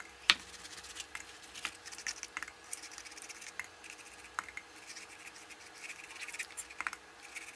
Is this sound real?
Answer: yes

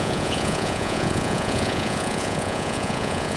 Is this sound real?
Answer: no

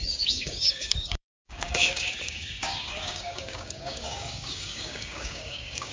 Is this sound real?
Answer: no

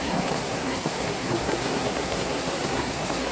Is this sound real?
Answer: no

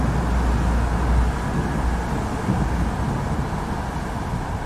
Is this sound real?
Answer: yes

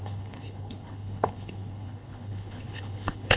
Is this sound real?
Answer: no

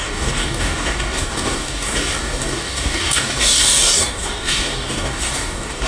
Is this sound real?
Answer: no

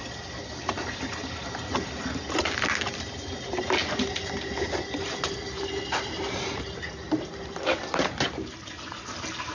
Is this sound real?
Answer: yes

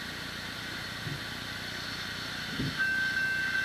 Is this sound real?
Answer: yes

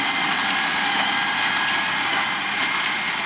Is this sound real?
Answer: yes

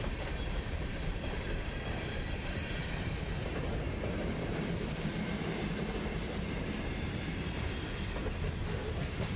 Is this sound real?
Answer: no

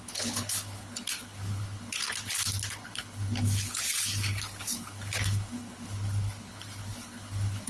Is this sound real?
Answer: no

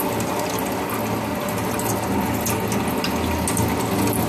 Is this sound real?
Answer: yes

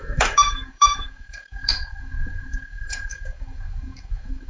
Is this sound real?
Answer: no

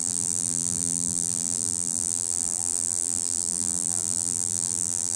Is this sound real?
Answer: no